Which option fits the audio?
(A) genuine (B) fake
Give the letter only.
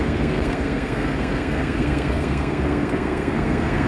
B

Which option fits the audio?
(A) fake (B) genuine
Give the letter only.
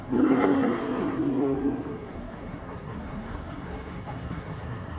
A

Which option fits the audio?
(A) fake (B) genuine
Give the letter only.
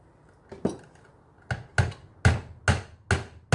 B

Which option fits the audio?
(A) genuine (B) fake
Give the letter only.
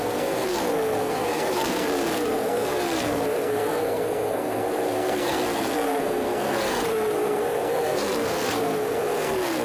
B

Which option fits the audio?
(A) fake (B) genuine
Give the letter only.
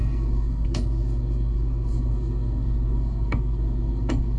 A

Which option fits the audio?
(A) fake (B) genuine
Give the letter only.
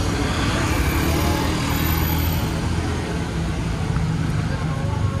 B